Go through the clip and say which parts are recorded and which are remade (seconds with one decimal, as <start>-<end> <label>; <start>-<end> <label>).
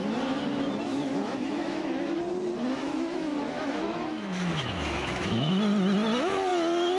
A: 0.0-0.9 recorded; 0.9-2.2 remade; 2.2-2.7 recorded; 2.7-5.5 remade; 5.5-7.0 recorded